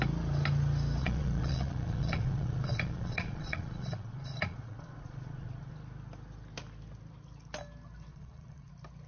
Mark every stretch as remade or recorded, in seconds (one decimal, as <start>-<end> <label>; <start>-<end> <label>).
0.0-1.0 recorded; 1.0-5.7 remade; 5.7-8.1 recorded; 8.1-8.7 remade; 8.7-9.1 recorded